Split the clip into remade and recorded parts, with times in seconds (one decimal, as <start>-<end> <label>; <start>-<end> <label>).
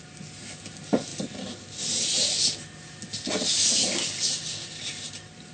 0.0-5.5 recorded